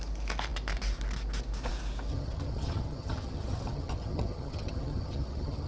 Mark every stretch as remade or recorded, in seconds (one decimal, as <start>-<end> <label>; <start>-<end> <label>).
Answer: 0.0-2.1 recorded; 2.1-5.7 remade

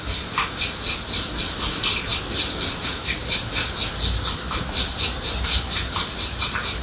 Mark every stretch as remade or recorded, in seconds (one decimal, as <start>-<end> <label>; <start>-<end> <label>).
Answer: 0.0-6.8 recorded

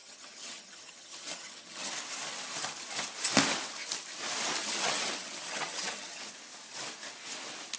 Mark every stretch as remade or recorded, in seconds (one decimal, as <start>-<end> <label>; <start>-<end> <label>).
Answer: 0.0-1.9 remade; 1.9-4.6 recorded; 4.6-6.2 remade; 6.2-7.8 recorded

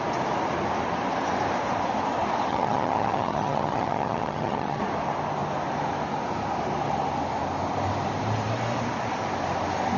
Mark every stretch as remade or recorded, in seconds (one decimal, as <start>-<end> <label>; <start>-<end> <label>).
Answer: 0.0-2.5 recorded; 2.5-4.8 remade; 4.8-10.0 recorded

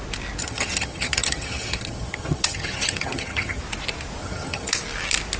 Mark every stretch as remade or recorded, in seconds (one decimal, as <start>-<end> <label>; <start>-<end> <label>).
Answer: 0.0-0.4 recorded; 0.4-3.6 remade; 3.6-4.2 recorded; 4.2-4.7 remade; 4.7-5.4 recorded

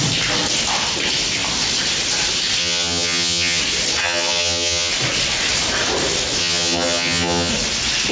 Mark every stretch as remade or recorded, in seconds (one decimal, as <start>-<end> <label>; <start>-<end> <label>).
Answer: 0.0-2.6 recorded; 2.6-3.6 remade; 3.6-4.0 recorded; 4.0-4.9 remade; 4.9-6.4 recorded; 6.4-7.5 remade; 7.5-8.1 recorded

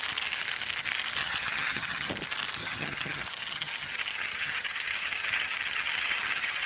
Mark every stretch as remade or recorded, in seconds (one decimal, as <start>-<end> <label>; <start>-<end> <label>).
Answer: 0.0-1.2 recorded; 1.2-2.1 remade; 2.1-2.6 recorded; 2.6-6.7 remade